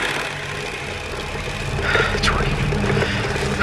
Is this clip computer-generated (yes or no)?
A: no